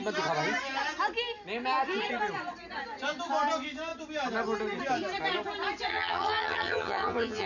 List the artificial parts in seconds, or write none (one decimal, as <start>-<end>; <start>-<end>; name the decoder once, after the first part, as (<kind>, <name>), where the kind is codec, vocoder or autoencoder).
5.9-7.5 (vocoder, HiFi-GAN)